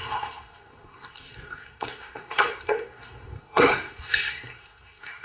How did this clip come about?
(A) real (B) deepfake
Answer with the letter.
B